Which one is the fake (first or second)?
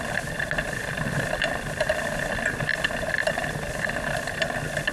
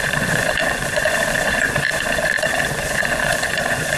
second